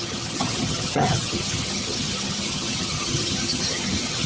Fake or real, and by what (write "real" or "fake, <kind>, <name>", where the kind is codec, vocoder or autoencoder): fake, vocoder, HiFi-GAN